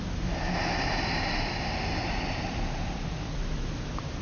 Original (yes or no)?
yes